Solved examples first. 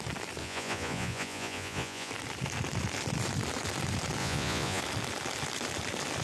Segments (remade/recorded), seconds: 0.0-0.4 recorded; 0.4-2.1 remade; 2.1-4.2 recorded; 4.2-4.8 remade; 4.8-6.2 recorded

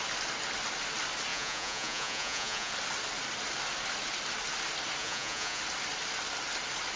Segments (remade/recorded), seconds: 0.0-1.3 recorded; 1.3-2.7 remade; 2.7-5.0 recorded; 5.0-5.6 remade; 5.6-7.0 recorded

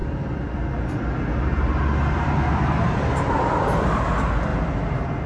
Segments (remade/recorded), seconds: 0.0-5.3 recorded